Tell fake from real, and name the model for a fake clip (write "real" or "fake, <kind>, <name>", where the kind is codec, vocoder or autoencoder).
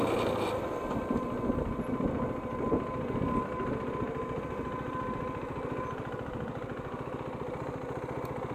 real